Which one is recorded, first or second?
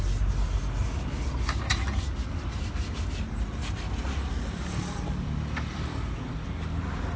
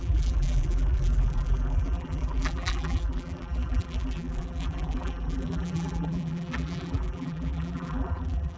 first